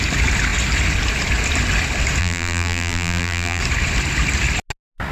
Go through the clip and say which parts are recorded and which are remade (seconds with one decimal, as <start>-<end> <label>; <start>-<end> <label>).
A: 0.0-2.2 recorded; 2.2-3.6 remade; 3.6-5.1 recorded